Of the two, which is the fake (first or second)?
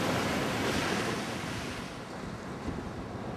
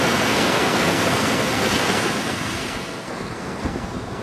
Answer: second